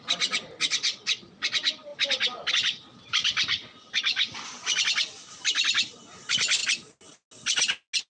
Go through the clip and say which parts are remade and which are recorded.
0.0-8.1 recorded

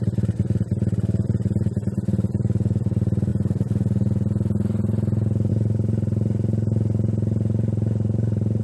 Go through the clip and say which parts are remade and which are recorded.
0.0-8.6 recorded

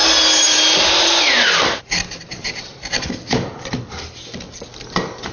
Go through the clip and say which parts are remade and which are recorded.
0.0-5.3 recorded

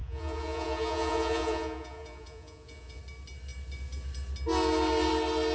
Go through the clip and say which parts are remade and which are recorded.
0.0-3.0 remade; 3.0-5.5 recorded